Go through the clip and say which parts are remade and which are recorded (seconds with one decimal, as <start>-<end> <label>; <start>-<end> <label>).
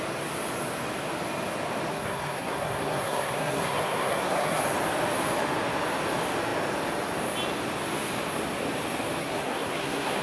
0.0-1.9 recorded; 1.9-4.6 remade; 4.6-9.2 recorded; 9.2-10.2 remade